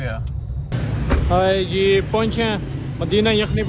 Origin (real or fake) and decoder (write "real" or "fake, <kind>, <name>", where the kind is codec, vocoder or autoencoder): real